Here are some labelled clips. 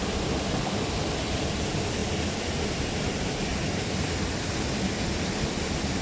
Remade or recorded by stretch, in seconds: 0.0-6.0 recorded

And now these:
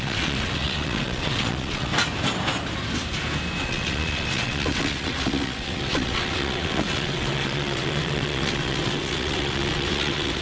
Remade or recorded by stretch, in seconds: 0.0-1.9 remade; 1.9-3.6 recorded; 3.6-10.4 remade